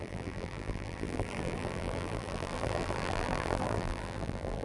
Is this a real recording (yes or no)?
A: no